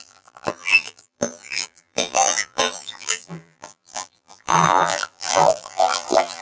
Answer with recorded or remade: remade